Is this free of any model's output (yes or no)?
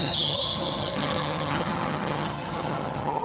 no